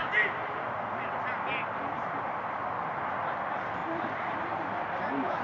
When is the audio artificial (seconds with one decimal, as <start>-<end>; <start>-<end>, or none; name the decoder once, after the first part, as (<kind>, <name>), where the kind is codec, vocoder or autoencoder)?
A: none

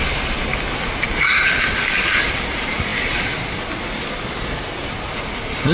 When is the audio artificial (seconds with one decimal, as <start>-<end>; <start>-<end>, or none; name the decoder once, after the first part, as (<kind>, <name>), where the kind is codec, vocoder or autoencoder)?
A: none